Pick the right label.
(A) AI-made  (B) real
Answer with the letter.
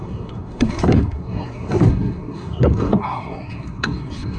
A